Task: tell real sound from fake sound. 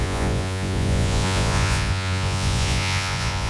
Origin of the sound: fake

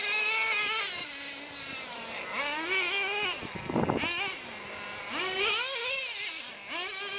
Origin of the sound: real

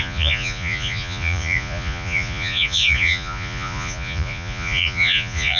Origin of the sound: fake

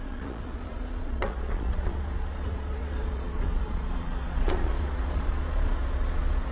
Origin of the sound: fake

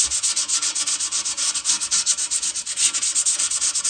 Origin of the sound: real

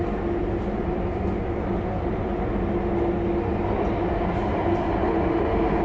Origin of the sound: real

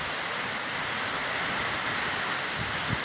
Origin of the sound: real